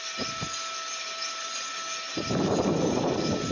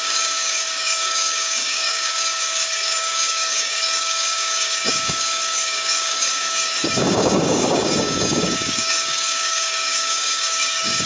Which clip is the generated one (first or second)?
second